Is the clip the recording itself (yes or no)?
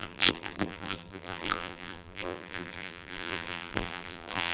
no